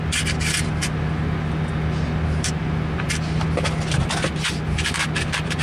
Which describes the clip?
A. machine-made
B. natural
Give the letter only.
B